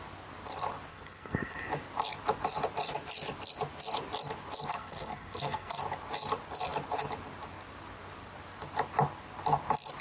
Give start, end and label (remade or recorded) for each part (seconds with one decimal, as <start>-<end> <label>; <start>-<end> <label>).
0.0-0.9 recorded; 0.9-1.7 remade; 1.7-4.7 recorded; 4.7-5.8 remade; 5.8-10.0 recorded